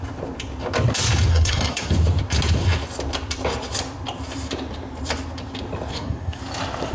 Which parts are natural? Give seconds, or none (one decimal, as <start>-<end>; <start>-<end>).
0.0-1.3; 1.9-5.9; 6.4-6.9